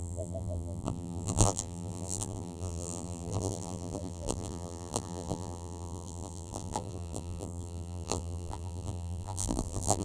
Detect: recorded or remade remade